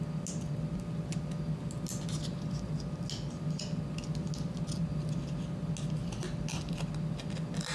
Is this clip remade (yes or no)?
no